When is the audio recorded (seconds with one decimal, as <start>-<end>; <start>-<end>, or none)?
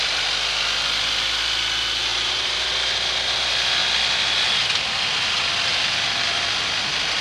0.0-2.1; 2.7-7.2